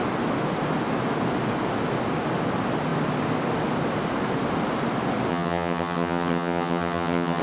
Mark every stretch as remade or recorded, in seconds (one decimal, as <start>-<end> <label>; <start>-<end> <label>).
0.0-5.3 recorded; 5.3-7.4 remade